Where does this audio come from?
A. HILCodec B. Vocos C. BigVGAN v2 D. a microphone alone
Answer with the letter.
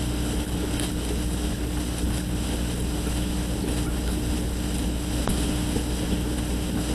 A